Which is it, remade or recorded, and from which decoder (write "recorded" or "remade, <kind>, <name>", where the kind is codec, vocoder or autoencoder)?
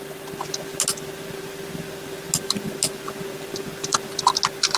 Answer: recorded